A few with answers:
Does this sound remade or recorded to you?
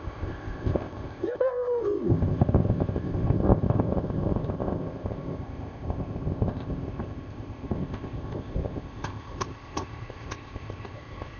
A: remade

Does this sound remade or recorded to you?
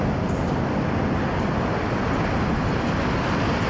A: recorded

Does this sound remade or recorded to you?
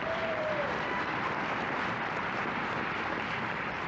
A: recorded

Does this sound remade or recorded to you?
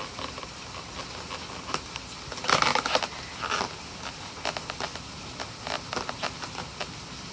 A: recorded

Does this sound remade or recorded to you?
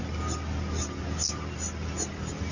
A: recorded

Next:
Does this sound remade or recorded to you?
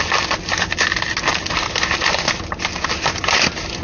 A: recorded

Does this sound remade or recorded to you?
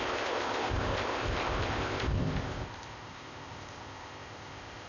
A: remade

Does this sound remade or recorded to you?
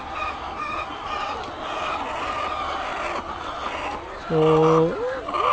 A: recorded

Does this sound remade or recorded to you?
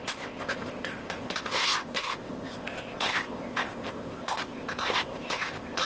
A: remade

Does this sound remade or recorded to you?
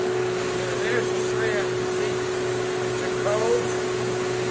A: recorded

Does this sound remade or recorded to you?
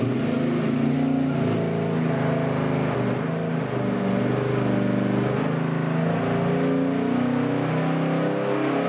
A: recorded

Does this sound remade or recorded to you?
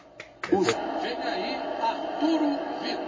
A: recorded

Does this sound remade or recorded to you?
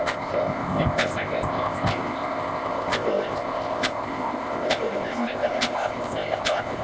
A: remade